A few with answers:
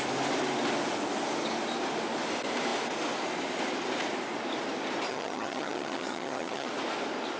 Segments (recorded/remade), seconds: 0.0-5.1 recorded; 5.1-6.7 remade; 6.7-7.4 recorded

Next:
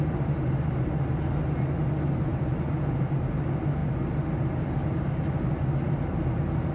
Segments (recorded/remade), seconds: 0.0-6.7 recorded

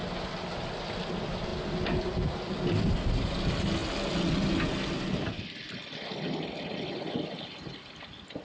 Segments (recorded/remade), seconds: 0.0-8.4 recorded